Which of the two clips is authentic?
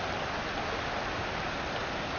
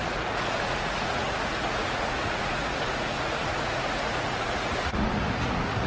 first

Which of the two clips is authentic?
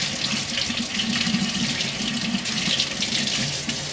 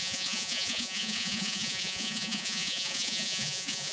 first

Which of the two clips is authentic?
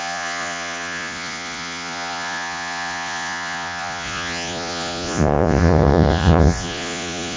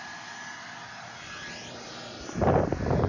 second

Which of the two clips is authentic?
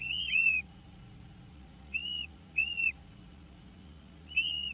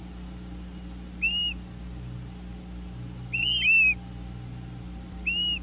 second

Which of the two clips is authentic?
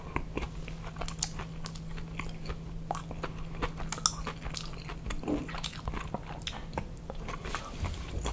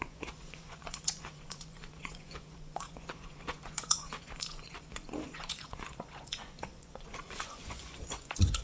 first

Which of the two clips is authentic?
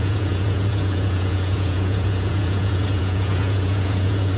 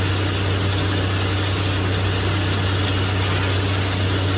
second